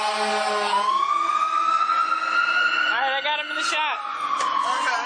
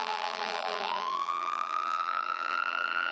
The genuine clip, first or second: first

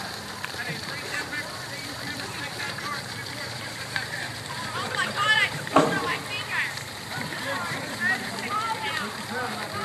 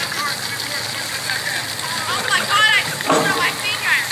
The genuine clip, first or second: second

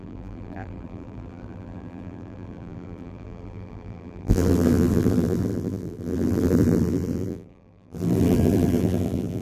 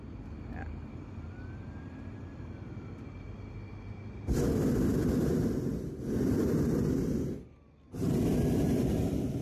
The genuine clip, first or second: second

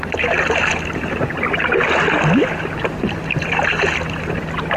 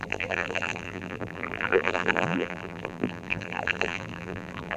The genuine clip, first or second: first